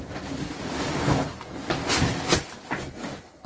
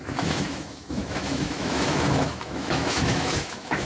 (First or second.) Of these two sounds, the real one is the first